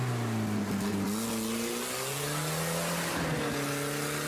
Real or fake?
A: real